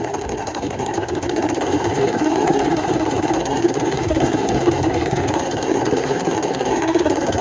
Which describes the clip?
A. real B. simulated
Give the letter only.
B